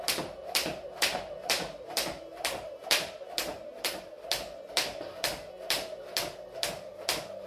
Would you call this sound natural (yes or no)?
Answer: yes